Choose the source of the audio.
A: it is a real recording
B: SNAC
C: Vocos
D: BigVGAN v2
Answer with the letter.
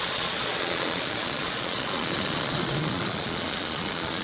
C